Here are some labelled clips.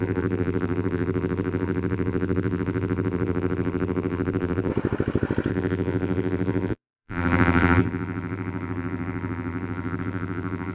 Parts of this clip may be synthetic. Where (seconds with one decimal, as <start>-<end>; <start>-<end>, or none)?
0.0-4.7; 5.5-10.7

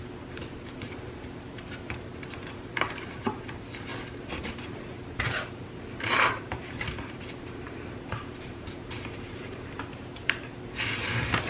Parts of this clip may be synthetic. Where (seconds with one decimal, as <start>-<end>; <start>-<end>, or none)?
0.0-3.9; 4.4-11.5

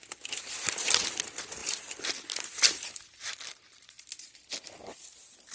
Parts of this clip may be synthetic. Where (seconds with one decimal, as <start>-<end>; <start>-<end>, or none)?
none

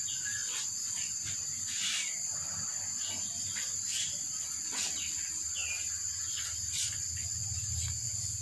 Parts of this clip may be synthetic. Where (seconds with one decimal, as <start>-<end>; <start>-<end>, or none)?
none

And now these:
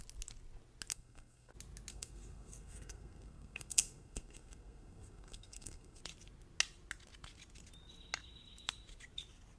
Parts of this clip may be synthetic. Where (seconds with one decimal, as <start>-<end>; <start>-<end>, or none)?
0.9-1.5; 1.9-6.0

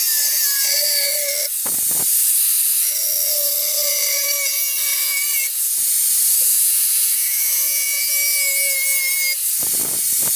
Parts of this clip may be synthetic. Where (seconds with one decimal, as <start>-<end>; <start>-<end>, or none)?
6.5-8.1

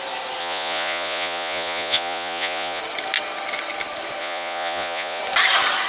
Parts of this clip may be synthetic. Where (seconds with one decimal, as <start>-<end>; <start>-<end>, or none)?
0.4-2.8; 4.2-5.2